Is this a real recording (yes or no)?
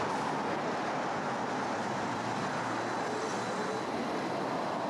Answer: yes